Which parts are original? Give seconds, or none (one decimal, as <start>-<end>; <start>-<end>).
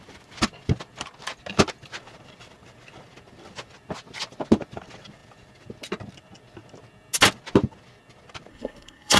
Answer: 0.0-8.5